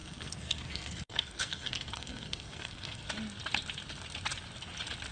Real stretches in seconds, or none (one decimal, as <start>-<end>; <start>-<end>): 3.1-5.1